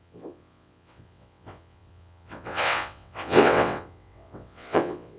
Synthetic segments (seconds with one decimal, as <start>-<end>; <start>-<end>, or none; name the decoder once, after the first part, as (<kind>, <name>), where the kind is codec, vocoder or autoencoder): 0.0-5.2 (vocoder, WaveNeXt)